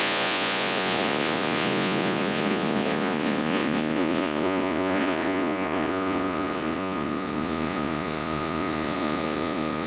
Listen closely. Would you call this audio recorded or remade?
remade